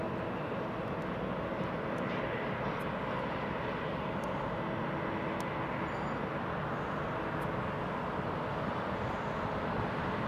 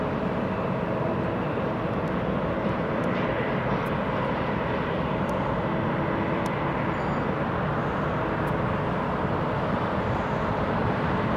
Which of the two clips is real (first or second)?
first